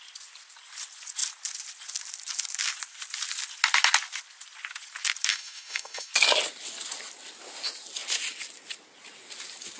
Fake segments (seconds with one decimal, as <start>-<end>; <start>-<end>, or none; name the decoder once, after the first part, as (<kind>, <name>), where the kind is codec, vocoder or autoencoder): 5.3-6.1 (autoencoder, DAC-VAE)